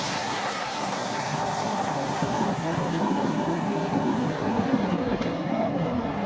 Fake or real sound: fake